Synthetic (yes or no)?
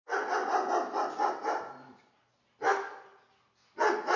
no